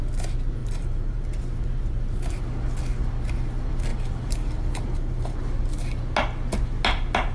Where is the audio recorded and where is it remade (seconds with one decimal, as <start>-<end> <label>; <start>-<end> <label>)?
0.0-0.6 recorded; 0.6-1.4 remade; 1.4-3.9 recorded; 3.9-5.4 remade; 5.4-7.3 recorded